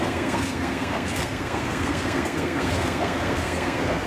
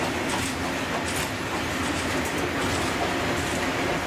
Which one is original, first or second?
second